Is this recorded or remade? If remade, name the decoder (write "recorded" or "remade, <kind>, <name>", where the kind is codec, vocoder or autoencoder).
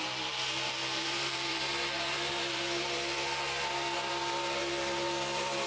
remade, vocoder, BigVGAN v2